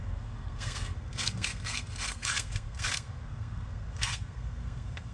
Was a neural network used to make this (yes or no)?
yes